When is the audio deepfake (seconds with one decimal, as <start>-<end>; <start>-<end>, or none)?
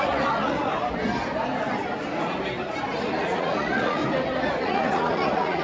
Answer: 0.0-0.7; 3.0-4.0; 4.6-5.6